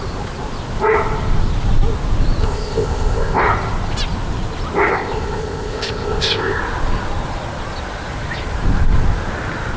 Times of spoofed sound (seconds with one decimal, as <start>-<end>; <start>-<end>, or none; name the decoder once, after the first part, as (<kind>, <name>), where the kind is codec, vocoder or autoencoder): 2.4-3.4 (codec, ZipCodec); 4.9-6.6